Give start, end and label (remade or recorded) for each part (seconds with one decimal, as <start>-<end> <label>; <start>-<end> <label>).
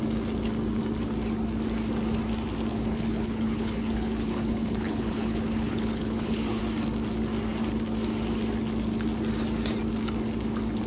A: 0.0-2.7 recorded; 2.7-6.6 remade; 6.6-10.9 recorded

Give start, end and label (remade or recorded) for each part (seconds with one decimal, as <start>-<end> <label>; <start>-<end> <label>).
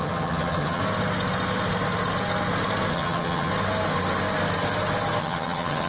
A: 0.0-0.8 remade; 0.8-2.9 recorded; 2.9-3.5 remade; 3.5-5.2 recorded; 5.2-5.9 remade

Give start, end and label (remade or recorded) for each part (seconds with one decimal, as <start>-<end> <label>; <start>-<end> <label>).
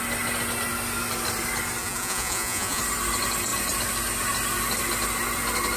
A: 0.0-1.8 recorded; 1.8-2.8 remade; 2.8-5.8 recorded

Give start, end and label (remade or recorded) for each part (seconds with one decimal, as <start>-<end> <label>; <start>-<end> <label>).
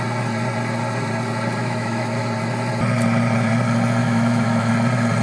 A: 0.0-1.6 recorded; 1.6-2.2 remade; 2.2-4.0 recorded; 4.0-4.7 remade; 4.7-5.2 recorded